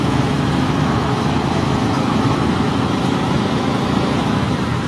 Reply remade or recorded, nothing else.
remade